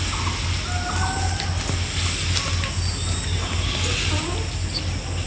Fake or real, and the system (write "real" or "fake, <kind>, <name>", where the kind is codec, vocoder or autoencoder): real